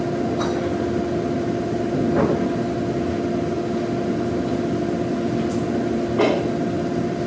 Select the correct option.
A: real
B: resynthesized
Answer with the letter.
A